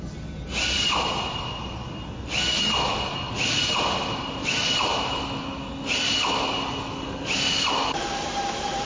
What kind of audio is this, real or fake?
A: real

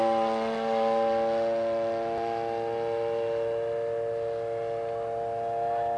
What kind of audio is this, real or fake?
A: real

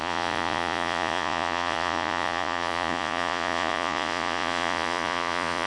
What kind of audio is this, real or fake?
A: fake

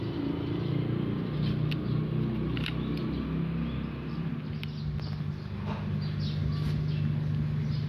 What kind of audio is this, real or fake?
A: real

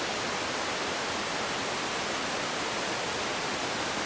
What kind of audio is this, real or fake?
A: real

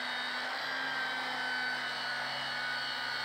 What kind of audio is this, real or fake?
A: real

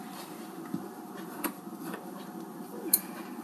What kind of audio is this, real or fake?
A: fake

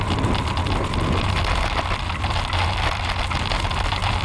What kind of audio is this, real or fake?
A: real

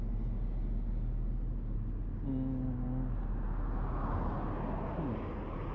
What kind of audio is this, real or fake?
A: real